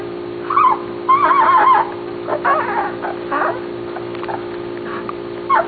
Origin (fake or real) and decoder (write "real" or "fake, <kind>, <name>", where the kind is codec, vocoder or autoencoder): real